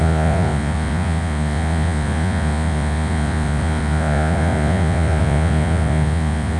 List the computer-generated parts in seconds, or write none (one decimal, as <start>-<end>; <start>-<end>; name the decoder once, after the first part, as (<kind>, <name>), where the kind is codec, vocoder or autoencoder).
0.0-6.6 (vocoder, Vocos)